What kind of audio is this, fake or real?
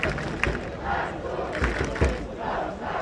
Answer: real